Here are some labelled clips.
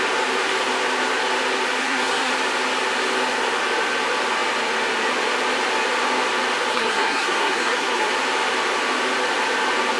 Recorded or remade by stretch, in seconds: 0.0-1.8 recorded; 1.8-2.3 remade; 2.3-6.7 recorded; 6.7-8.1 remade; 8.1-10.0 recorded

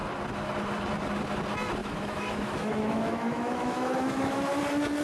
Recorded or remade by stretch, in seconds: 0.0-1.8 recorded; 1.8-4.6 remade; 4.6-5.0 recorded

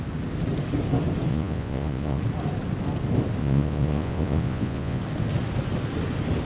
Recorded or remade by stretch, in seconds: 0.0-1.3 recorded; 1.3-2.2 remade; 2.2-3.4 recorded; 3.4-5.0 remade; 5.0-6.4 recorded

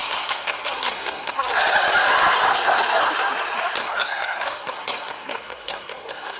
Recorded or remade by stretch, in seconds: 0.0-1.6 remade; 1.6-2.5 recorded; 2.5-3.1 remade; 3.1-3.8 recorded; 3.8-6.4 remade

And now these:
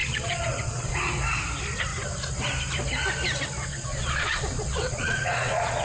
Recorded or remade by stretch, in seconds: 0.0-0.9 remade; 0.9-3.7 recorded; 3.7-5.8 remade